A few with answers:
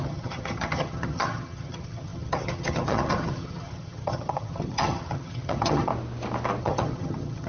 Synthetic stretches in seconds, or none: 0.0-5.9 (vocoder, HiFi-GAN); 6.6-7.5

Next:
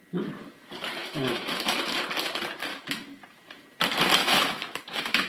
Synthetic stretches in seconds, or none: 1.0-1.8 (autoencoder, DAC-VAE); 2.7-3.2; 4.2-5.3

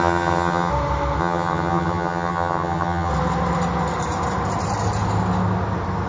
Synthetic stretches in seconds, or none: 0.0-0.7 (vocoder, HiFi-GAN); 1.2-3.1

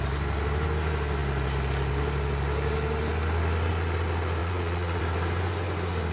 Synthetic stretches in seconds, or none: 4.4-5.0 (vocoder, Vocos)

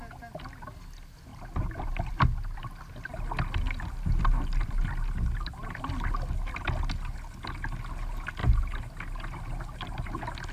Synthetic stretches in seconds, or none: 1.3-2.6 (vocoder, BigVGAN v2)

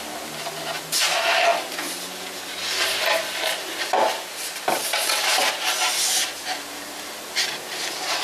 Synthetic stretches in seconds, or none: none